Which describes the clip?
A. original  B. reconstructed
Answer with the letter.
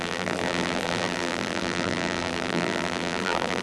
B